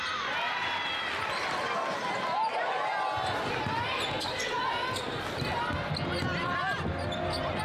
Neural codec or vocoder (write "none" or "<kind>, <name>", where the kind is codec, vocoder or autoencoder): none